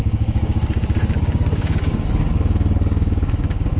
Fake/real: fake